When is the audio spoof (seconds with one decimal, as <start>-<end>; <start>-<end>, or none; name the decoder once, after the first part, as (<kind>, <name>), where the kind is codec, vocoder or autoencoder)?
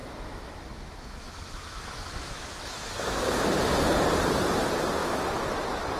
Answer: 0.0-3.3 (autoencoder, DAC-VAE); 5.0-5.5